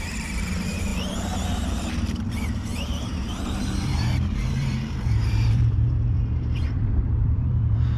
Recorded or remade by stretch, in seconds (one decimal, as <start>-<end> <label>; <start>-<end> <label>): 0.0-8.0 remade